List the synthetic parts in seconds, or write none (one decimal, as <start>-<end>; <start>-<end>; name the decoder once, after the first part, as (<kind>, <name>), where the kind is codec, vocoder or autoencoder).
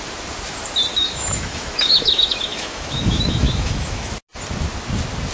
0.9-4.1 (autoencoder, DAC-VAE)